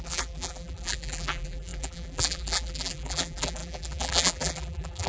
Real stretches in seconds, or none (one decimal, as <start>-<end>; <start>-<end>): none